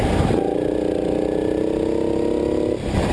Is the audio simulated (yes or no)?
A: no